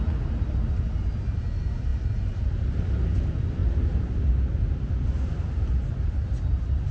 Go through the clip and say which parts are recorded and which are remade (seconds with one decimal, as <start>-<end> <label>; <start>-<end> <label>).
0.0-1.9 recorded; 1.9-3.1 remade; 3.1-6.9 recorded